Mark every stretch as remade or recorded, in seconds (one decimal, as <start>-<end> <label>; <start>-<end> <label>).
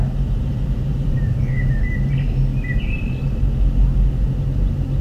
0.0-0.9 recorded; 0.9-1.8 remade; 1.8-5.0 recorded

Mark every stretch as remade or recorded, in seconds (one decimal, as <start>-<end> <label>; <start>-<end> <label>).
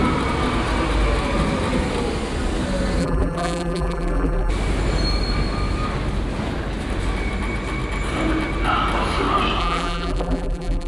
0.0-3.0 recorded; 3.0-4.5 remade; 4.5-9.6 recorded; 9.6-10.9 remade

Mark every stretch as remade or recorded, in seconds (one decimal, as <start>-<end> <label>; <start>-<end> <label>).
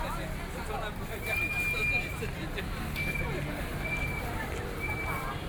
0.0-3.7 recorded; 3.7-5.5 remade